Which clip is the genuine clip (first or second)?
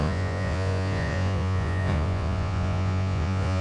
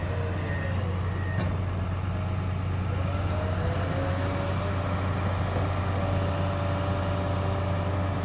second